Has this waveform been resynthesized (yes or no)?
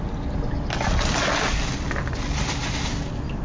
no